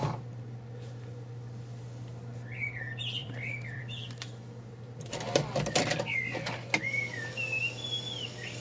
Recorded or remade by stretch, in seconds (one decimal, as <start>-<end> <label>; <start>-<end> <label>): 0.0-3.2 recorded; 3.2-3.8 remade; 3.8-8.6 recorded